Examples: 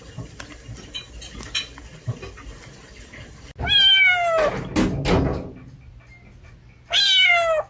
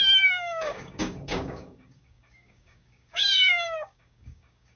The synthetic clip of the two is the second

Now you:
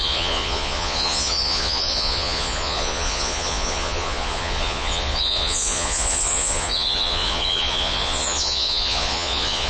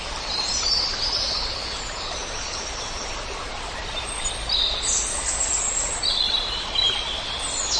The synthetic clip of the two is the first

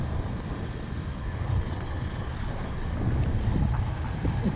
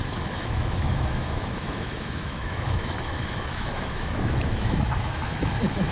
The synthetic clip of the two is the second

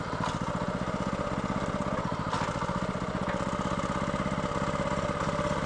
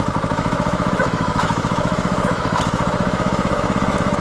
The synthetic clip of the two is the second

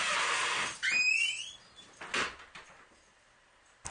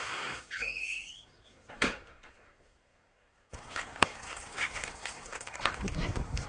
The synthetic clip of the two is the second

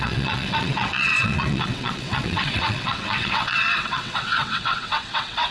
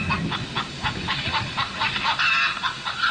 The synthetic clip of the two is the first